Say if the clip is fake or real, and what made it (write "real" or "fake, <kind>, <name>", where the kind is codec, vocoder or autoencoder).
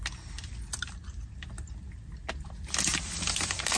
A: real